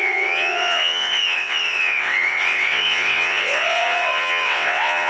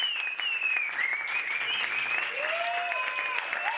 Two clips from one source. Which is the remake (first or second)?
first